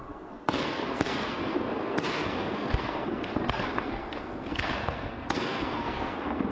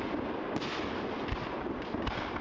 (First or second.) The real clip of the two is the second